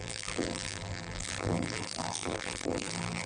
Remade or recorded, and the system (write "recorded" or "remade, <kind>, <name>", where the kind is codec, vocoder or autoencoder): remade, vocoder, BigVGAN v2